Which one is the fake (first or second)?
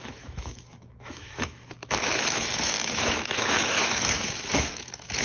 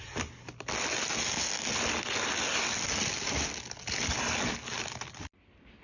first